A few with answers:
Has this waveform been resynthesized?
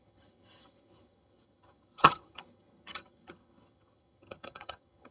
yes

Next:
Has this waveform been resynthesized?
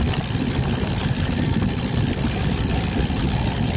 no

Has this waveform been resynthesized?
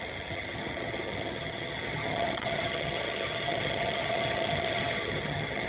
yes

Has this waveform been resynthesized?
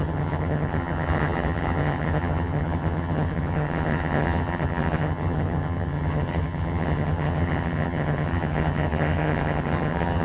yes